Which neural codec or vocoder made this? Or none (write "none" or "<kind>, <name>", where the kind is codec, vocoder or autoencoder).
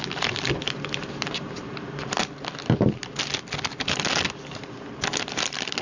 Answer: none